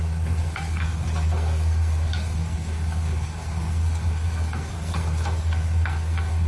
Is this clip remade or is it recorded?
remade